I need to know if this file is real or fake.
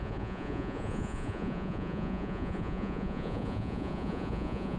fake